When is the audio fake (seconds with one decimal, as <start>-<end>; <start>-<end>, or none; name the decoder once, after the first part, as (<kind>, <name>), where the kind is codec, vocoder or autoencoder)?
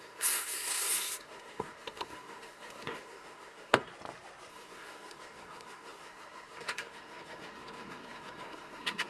0.0-3.9 (codec, SNAC); 4.5-9.1